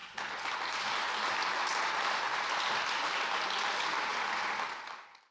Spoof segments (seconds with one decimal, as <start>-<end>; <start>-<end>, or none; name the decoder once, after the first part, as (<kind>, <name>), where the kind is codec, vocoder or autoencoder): none